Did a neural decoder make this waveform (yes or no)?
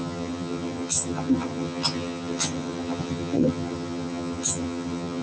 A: yes